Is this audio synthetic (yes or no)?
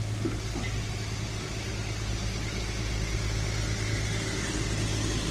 no